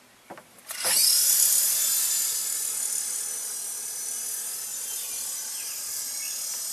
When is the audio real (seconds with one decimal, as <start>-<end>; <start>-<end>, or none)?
0.0-6.7